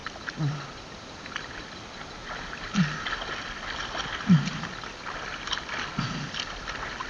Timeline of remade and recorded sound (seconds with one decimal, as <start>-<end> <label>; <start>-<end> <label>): 0.0-1.1 remade; 1.1-7.1 recorded